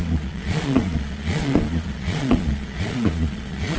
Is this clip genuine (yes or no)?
no